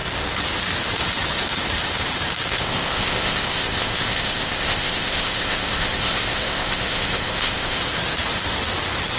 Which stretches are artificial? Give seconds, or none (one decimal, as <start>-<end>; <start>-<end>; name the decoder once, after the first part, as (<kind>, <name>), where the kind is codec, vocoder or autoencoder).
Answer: 2.5-7.8 (codec, ZipCodec)